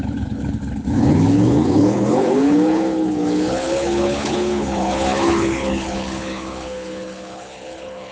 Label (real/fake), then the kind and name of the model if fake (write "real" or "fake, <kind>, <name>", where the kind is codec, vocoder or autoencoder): fake, codec, HILCodec